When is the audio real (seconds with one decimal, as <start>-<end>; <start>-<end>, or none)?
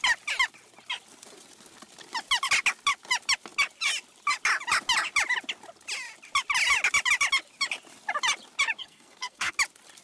0.0-8.8; 9.5-10.0